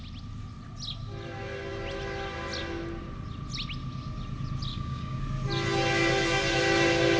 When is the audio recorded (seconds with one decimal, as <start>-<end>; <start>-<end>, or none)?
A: 0.0-4.7; 5.2-7.2